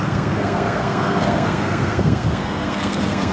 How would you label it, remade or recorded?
remade